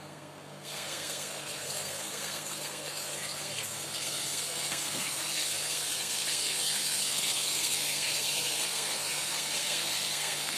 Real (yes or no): no